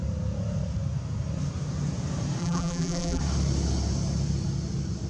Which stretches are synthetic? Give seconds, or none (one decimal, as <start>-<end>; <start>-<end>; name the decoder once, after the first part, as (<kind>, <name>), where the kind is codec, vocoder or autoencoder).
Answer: 2.4-3.2 (vocoder, BigVGAN v2)